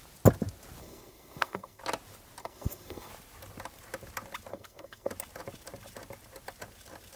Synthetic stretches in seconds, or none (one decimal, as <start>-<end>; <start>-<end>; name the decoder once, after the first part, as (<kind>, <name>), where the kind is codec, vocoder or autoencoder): 0.8-1.8 (codec, SNAC); 2.4-3.1; 4.5-5.1

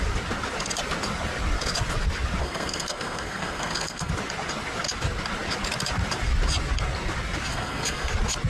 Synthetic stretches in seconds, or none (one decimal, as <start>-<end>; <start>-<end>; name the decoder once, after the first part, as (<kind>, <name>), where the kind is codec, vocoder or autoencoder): 2.4-4.1 (codec, SNAC); 7.5-8.1

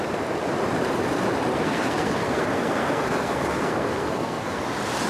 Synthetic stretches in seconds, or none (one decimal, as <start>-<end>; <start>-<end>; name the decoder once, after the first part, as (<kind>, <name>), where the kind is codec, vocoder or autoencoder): 1.5-4.6 (codec, SNAC)

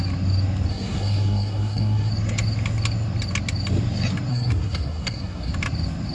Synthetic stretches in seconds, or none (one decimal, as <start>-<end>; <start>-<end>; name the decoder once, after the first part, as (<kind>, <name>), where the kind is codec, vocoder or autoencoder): 0.7-2.1 (codec, SNAC); 4.3-5.5